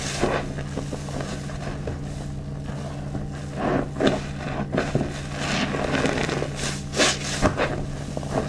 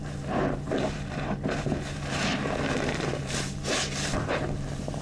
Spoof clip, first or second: second